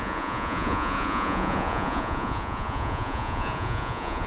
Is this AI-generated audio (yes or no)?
yes